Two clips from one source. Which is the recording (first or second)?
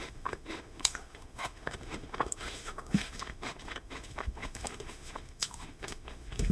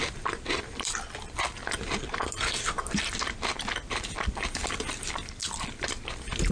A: second